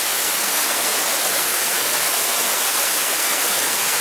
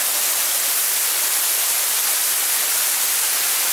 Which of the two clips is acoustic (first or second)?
second